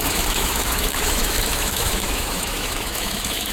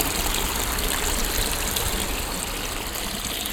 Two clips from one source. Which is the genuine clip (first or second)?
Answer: second